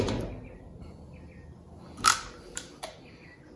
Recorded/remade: recorded